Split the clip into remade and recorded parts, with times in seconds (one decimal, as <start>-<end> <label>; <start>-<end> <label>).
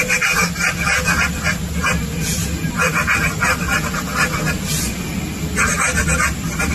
0.0-6.7 recorded